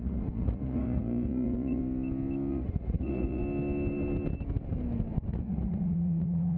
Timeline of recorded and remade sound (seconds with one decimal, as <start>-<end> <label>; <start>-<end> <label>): 0.0-1.8 remade; 1.8-2.5 recorded; 2.5-3.4 remade; 3.4-5.3 recorded; 5.3-6.6 remade